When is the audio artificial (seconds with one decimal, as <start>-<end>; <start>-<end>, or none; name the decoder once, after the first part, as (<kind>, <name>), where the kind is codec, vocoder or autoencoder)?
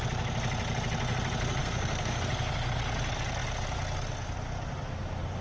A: 1.6-2.2 (codec, SNAC)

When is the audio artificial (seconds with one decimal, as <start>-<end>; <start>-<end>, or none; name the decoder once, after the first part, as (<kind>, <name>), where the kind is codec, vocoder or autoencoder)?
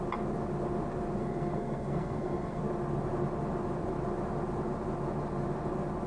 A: 1.2-2.6 (codec, SNAC)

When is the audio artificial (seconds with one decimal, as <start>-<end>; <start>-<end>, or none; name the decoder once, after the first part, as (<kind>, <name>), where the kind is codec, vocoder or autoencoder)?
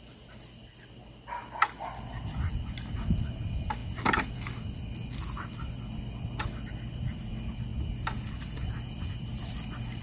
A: none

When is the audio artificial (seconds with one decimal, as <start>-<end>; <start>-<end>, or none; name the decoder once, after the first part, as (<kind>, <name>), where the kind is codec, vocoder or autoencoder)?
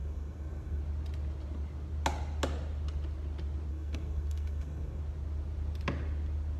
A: 0.0-0.8 (codec, SNAC); 3.7-5.0